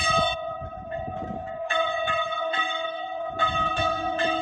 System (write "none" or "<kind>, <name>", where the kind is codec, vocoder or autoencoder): vocoder, Vocos